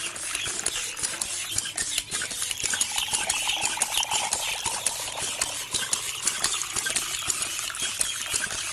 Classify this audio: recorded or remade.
recorded